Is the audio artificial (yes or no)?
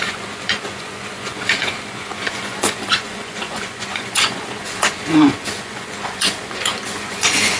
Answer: yes